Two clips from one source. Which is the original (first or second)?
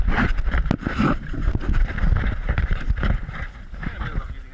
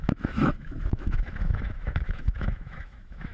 first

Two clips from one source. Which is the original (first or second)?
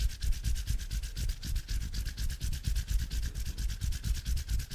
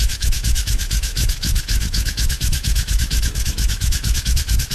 first